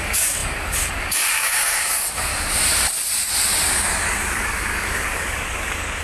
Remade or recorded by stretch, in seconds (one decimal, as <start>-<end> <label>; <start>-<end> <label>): 0.0-2.3 remade; 2.3-3.7 recorded; 3.7-6.0 remade